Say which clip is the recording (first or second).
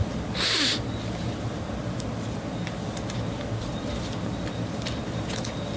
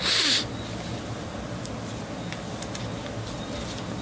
second